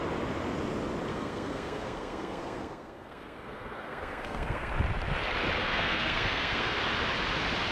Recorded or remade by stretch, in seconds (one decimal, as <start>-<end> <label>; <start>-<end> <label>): 0.0-1.1 recorded; 1.1-4.7 remade; 4.7-5.6 recorded; 5.6-6.8 remade; 6.8-7.7 recorded